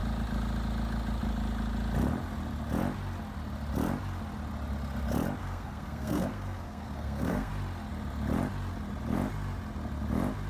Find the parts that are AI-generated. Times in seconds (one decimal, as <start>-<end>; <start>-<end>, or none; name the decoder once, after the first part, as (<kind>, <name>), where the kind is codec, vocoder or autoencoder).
5.4-7.5 (codec, SNAC)